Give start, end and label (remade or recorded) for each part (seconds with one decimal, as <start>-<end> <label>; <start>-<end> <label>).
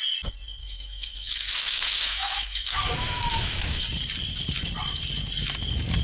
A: 0.0-0.6 recorded; 0.6-3.8 remade; 3.8-6.0 recorded